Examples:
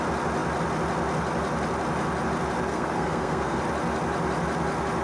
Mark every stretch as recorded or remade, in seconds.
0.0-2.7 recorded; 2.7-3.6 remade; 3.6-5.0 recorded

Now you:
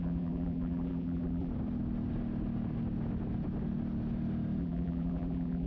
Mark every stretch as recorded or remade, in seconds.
0.0-1.5 remade; 1.5-4.6 recorded; 4.6-5.7 remade

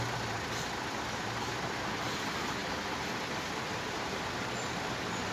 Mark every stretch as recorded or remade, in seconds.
0.0-5.3 recorded

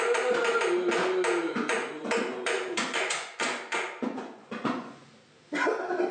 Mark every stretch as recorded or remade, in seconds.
0.0-1.4 recorded; 1.4-5.1 remade; 5.1-6.1 recorded